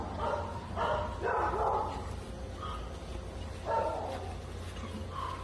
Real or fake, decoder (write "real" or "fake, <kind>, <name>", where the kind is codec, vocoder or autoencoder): real